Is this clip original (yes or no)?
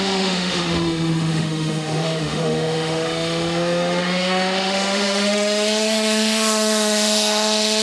no